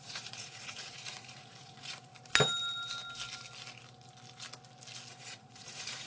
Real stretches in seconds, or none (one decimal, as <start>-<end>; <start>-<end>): 2.1-5.1